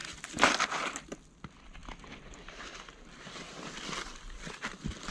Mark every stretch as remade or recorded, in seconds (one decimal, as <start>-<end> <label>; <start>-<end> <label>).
0.0-1.0 remade; 1.0-1.8 recorded; 1.8-5.1 remade